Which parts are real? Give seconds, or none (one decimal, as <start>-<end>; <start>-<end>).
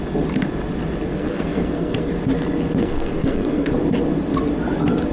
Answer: 0.0-1.1; 2.1-2.8; 3.7-5.1